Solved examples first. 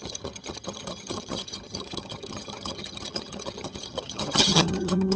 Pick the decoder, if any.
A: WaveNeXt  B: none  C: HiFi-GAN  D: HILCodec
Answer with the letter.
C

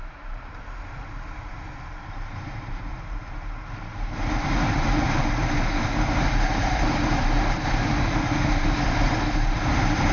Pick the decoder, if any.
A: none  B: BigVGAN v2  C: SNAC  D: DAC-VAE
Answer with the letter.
B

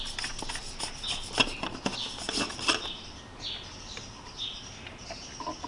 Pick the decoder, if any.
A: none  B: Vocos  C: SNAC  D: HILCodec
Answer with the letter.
A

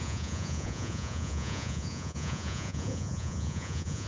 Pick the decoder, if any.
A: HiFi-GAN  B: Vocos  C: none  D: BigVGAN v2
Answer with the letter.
B